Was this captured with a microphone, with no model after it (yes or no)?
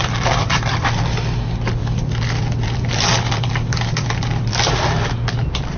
no